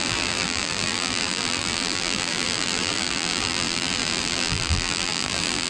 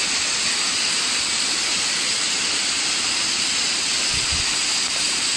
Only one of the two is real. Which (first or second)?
second